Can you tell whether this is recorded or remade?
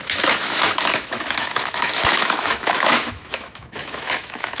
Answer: remade